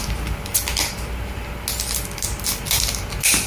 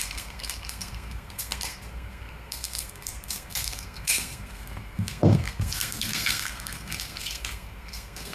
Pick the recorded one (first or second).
first